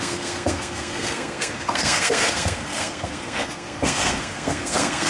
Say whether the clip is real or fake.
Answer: fake